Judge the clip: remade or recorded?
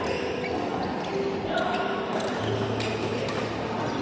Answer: recorded